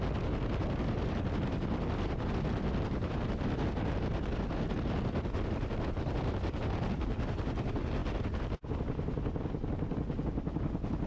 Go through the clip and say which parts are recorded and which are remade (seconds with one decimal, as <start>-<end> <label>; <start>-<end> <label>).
0.0-11.1 recorded

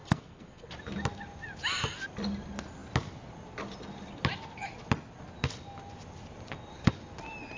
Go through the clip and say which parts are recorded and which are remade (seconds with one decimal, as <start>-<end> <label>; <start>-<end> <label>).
0.0-0.7 remade; 0.7-7.6 recorded

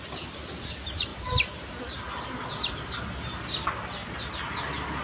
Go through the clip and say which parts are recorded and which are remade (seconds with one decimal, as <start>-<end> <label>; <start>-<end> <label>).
0.0-5.0 recorded